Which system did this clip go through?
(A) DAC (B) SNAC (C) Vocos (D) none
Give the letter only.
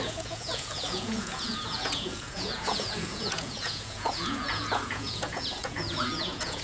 C